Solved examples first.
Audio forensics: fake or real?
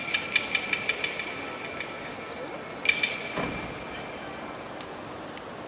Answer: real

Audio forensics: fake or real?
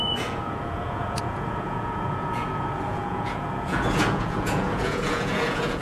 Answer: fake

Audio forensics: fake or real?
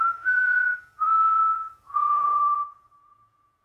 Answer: fake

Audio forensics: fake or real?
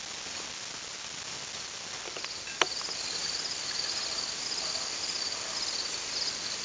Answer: real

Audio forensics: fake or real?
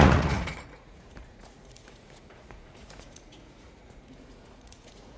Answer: fake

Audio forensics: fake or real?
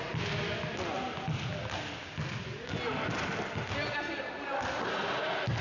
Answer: real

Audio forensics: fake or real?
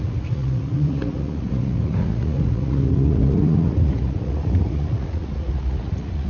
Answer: fake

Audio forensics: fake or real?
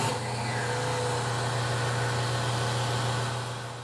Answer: real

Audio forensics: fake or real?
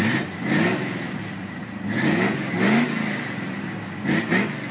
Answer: real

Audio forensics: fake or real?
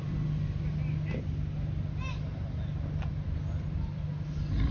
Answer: real